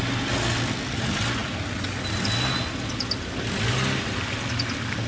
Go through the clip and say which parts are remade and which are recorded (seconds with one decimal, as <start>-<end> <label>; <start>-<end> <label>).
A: 0.0-5.1 recorded

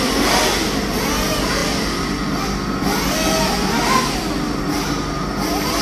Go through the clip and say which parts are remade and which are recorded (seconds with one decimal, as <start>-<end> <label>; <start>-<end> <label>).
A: 0.0-5.8 recorded

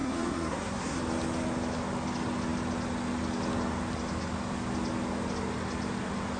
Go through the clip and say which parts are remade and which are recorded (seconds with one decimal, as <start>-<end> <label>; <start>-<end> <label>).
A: 0.0-1.0 remade; 1.0-6.4 recorded